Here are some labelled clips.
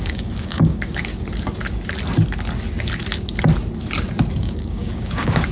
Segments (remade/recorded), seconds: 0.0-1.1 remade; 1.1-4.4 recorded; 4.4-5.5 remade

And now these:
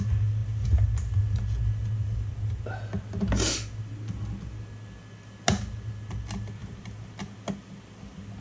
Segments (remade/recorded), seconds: 0.0-8.4 recorded